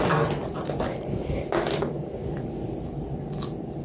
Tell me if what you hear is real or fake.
real